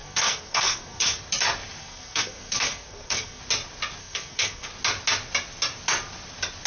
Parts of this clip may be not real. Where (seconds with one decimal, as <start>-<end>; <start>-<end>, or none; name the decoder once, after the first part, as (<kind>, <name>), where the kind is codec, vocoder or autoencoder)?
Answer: 0.0-1.2 (codec, SNAC); 1.8-3.4; 4.0-4.7